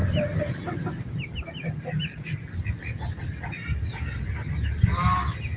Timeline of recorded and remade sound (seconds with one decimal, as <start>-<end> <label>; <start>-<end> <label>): 0.0-5.6 recorded